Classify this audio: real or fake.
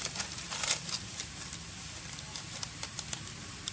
fake